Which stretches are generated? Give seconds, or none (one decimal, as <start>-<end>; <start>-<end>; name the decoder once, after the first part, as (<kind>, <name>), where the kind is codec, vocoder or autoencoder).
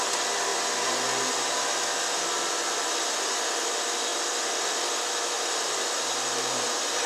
0.0-0.5 (vocoder, BigVGAN v2); 1.8-7.1